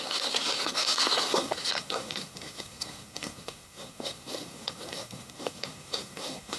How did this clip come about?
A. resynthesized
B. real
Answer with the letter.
A